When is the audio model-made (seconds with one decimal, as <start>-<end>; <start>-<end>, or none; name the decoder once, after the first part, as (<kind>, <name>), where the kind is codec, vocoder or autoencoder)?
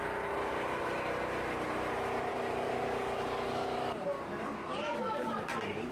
2.3-5.9 (codec, DAC)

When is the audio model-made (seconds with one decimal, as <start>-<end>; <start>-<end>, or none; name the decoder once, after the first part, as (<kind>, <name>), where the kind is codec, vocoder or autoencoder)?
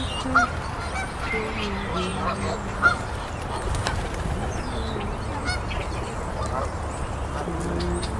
2.1-4.2 (vocoder, BigVGAN v2)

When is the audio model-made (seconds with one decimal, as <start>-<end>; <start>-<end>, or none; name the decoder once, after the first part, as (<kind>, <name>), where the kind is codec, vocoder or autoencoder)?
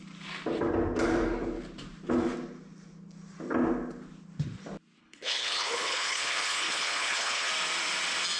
5.0-7.5 (codec, HILCodec)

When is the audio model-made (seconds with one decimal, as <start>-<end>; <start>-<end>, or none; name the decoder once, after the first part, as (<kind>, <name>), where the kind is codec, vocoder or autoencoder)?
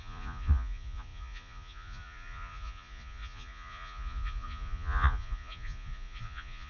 0.0-6.7 (vocoder, Vocos)